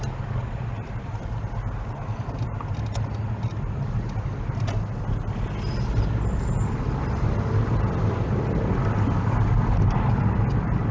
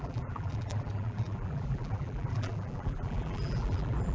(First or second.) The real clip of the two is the first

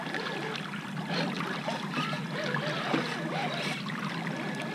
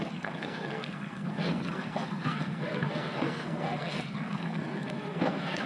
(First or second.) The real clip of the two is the first